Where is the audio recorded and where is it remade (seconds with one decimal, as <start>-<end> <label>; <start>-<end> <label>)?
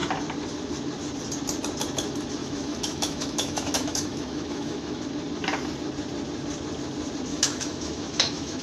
0.0-2.4 recorded; 2.4-5.0 remade; 5.0-7.3 recorded; 7.3-8.6 remade